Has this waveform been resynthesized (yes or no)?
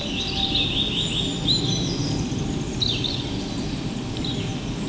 no